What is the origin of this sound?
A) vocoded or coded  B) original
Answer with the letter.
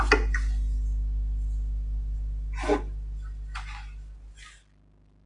B